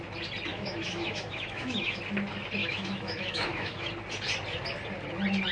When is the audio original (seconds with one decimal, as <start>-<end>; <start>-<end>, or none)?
0.0-0.5; 2.0-2.6; 3.9-5.5